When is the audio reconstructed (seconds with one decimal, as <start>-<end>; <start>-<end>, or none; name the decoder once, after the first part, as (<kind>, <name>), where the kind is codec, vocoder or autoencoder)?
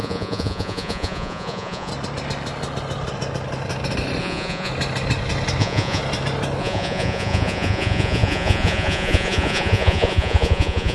0.0-1.9 (vocoder, Vocos); 4.2-4.7; 5.6-6.0; 6.6-10.9